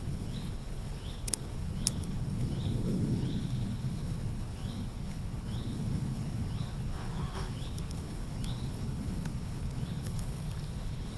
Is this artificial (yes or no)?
yes